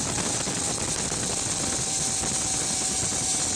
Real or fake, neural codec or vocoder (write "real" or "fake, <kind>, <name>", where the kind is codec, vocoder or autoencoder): real